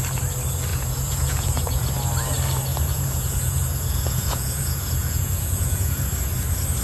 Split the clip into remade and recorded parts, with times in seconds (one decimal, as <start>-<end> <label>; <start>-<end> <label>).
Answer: 0.0-0.7 recorded; 0.7-1.9 remade; 1.9-2.7 recorded; 2.7-6.1 remade; 6.1-6.8 recorded